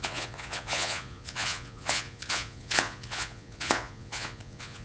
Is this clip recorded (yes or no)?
no